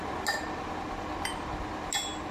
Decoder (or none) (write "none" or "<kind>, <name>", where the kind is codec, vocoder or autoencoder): none